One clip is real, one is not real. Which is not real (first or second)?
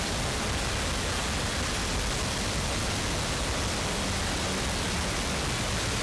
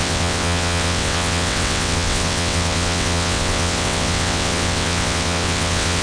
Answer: second